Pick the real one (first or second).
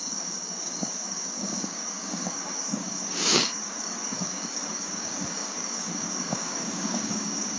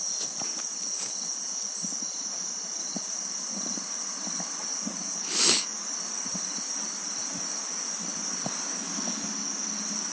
second